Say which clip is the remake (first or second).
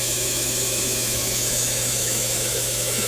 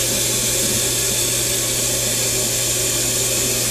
first